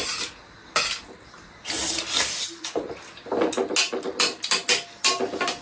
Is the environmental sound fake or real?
real